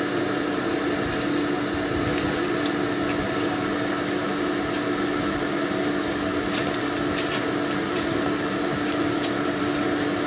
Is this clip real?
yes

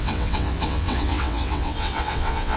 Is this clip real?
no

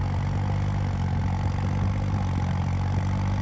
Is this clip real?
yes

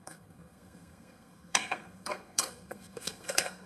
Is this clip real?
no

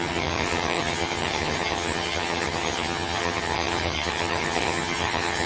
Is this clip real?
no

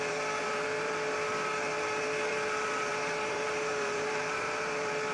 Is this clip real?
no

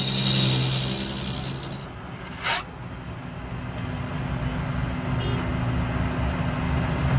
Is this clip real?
yes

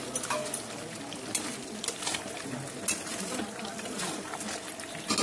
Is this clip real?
yes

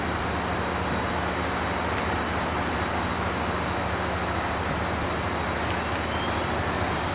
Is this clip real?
yes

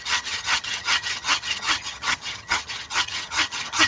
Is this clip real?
no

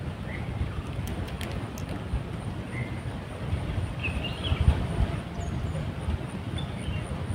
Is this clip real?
yes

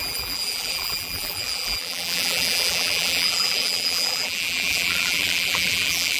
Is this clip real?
no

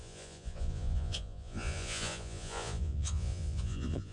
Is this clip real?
no